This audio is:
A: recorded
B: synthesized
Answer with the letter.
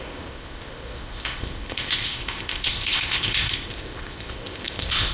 B